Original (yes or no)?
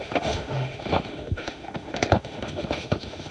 no